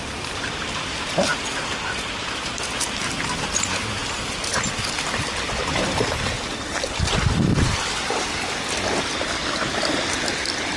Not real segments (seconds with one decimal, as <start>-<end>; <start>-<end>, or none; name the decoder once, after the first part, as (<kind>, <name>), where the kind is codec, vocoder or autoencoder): none